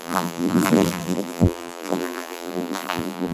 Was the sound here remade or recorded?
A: remade